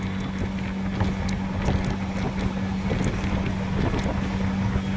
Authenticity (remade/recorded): recorded